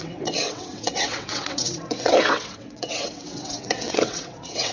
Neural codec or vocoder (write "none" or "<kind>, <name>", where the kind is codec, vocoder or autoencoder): vocoder, WaveNeXt